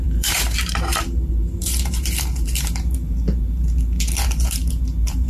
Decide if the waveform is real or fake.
fake